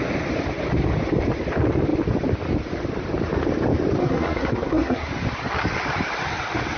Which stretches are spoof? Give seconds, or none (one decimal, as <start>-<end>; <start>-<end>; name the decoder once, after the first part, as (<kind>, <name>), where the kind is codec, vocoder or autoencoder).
4.0-5.1 (codec, SNAC)